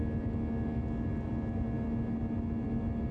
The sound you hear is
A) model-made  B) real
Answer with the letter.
B